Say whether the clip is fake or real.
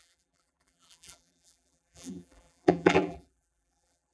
fake